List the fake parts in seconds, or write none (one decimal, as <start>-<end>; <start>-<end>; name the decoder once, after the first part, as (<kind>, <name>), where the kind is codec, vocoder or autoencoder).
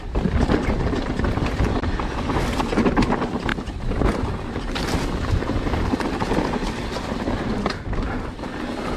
none